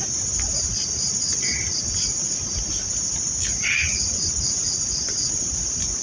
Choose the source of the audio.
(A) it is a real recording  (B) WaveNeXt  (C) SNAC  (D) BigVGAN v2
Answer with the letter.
A